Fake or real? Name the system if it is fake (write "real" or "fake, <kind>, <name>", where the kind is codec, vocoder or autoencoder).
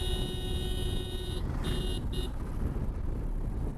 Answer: real